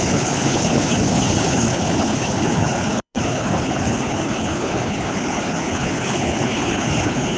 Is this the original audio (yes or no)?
no